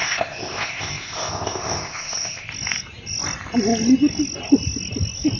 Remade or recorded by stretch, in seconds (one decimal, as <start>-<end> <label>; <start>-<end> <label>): 0.0-2.5 remade; 2.5-5.4 recorded